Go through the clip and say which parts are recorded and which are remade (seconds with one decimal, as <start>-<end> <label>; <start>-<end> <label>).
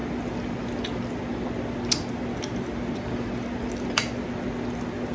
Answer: 0.0-5.1 recorded